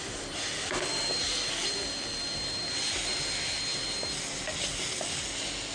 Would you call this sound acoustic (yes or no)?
yes